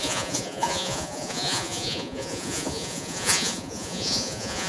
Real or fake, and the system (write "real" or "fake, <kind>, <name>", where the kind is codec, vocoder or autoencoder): fake, vocoder, Vocos